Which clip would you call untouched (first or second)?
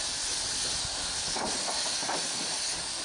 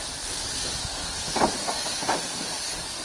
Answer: first